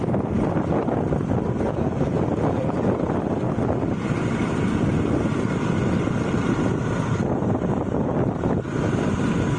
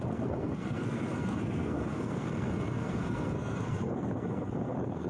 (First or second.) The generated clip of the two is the second